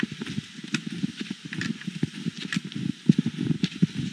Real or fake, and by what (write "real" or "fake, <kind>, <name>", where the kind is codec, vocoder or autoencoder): real